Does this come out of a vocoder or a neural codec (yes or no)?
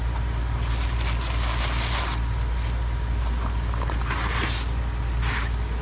no